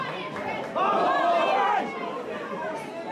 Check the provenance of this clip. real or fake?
real